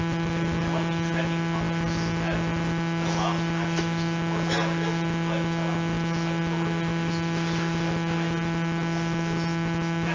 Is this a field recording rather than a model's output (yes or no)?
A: yes